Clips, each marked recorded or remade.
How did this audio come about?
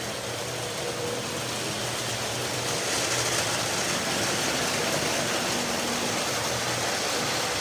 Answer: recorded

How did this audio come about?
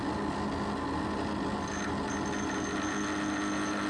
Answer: recorded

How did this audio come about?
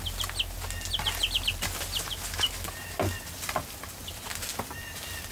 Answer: recorded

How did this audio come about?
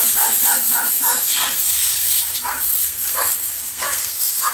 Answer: remade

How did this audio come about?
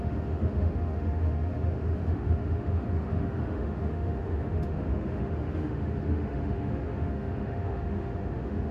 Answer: remade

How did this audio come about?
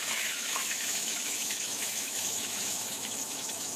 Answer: remade